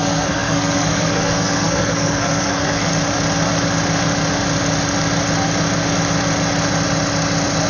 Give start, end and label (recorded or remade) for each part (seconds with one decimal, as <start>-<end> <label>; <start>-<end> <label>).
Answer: 0.0-2.9 remade; 2.9-7.7 recorded

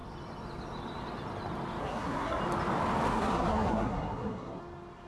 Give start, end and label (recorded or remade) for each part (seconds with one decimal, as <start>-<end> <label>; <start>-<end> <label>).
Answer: 0.0-1.8 recorded; 1.8-2.4 remade; 2.4-3.1 recorded; 3.1-4.6 remade; 4.6-5.1 recorded

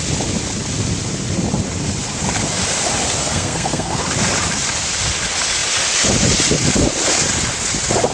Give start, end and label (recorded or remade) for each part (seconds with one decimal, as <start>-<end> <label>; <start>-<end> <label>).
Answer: 0.0-3.2 recorded; 3.2-4.0 remade; 4.0-8.1 recorded

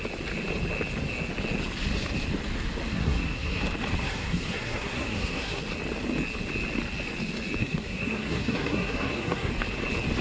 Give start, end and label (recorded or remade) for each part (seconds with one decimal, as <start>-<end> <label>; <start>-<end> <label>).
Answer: 0.0-2.9 recorded; 2.9-3.6 remade; 3.6-4.0 recorded; 4.0-5.6 remade; 5.6-7.6 recorded; 7.6-9.5 remade; 9.5-10.2 recorded

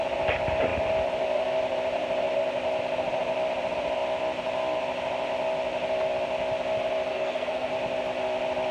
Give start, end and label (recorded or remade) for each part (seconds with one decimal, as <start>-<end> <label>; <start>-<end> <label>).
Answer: 0.0-7.1 recorded; 7.1-7.7 remade; 7.7-8.7 recorded

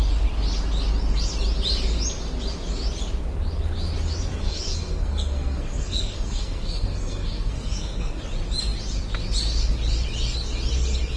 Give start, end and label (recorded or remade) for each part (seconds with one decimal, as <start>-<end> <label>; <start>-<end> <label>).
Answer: 0.0-4.3 recorded; 4.3-8.2 remade; 8.2-11.2 recorded